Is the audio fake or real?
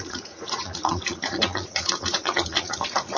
fake